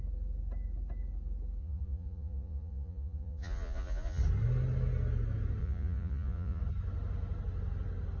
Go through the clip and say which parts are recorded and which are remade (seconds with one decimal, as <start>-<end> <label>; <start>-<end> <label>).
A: 0.0-1.6 recorded; 1.6-4.2 remade; 4.2-5.6 recorded; 5.6-6.6 remade; 6.6-8.2 recorded

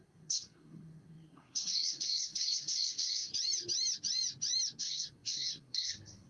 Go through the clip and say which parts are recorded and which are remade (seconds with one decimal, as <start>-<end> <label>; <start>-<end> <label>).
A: 0.0-3.3 remade; 3.3-4.8 recorded; 4.8-6.3 remade

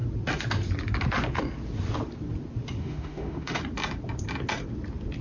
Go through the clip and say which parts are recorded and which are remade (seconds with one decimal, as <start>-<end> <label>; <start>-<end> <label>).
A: 0.0-2.8 recorded; 2.8-3.6 remade; 3.6-5.2 recorded